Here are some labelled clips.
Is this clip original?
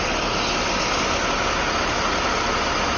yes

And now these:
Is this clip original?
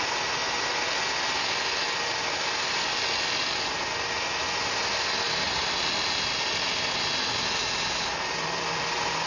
yes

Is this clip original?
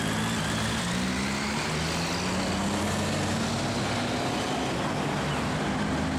yes